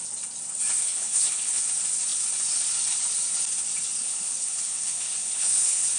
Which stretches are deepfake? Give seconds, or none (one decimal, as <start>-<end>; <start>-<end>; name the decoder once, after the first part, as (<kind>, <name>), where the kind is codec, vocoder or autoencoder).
0.8-1.6 (codec, HILCodec); 4.0-6.0